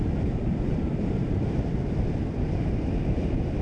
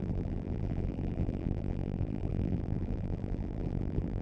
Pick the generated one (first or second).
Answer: second